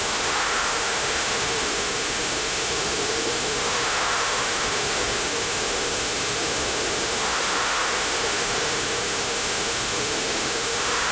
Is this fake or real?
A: fake